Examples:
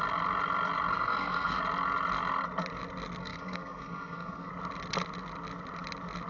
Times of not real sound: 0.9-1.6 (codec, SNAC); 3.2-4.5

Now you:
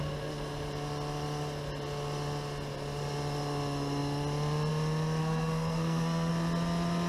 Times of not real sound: 5.2-6.3 (codec, SNAC)

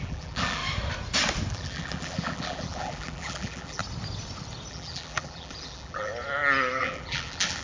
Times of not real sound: 0.0-0.6 (vocoder, BigVGAN v2); 1.5-3.8; 4.7-6.1; 6.8-7.6

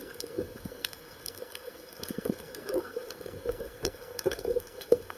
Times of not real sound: 0.0-5.2 (codec, SNAC)

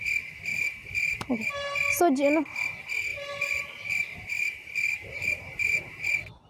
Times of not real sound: 0.5-1.5 (vocoder, BigVGAN v2); 3.1-5.8